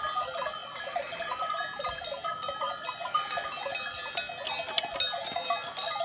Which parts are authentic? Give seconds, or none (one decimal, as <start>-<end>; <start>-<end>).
0.0-6.0